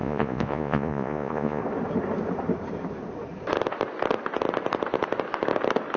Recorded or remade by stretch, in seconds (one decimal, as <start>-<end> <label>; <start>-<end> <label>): 0.0-1.6 remade; 1.6-6.0 recorded